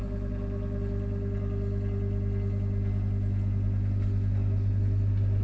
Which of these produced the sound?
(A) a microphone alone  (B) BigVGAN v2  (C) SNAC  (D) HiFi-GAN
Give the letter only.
A